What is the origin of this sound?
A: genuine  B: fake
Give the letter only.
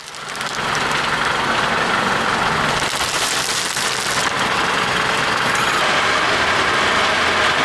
A